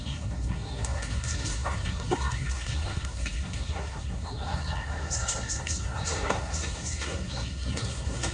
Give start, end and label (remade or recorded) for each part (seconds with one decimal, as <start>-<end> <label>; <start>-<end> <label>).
0.0-8.3 remade